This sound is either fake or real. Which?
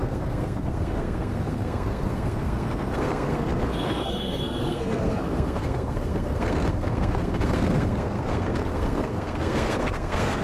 fake